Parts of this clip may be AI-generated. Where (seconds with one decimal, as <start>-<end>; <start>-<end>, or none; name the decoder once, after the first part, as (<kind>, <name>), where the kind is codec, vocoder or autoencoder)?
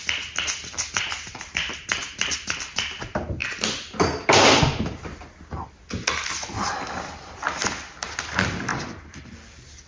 8.7-9.3 (vocoder, BigVGAN v2)